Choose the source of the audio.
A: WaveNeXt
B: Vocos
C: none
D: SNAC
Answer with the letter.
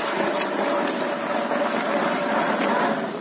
C